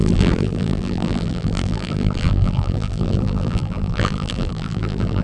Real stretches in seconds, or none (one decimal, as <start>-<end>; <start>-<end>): none